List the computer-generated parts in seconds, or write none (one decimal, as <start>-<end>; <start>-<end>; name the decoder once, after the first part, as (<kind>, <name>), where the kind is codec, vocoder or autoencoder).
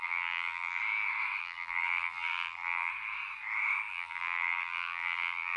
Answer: 0.0-0.8 (vocoder, BigVGAN v2); 1.4-2.9; 3.9-5.6